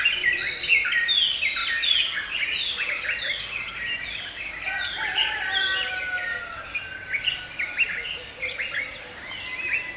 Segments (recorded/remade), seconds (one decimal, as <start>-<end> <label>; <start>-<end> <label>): 0.0-10.0 recorded